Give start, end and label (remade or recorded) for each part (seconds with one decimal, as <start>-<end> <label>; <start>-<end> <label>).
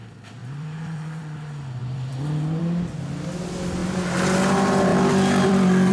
0.0-0.4 recorded; 0.4-1.2 remade; 1.2-1.8 recorded; 1.8-2.6 remade; 2.6-4.9 recorded; 4.9-5.9 remade